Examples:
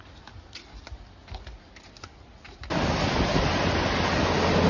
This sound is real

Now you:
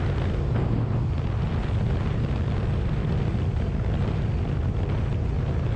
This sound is real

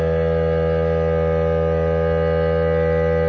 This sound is real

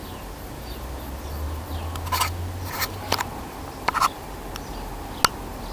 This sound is real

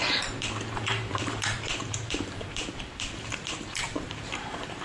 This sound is fake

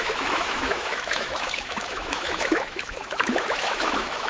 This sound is fake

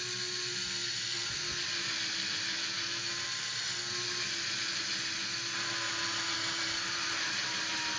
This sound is real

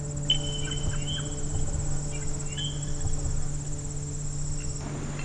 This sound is real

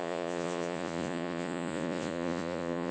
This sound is fake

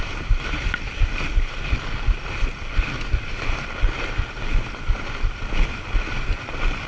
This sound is real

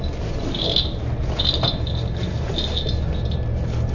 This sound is real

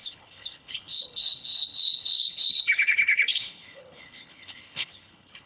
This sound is fake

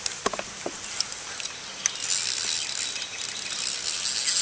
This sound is real